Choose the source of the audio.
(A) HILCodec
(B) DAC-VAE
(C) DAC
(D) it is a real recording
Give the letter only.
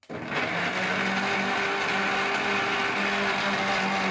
D